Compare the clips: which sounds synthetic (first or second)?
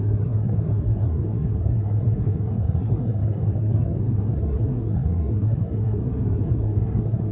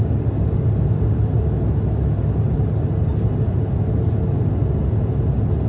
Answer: first